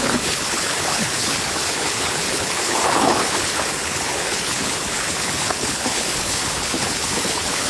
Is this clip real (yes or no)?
no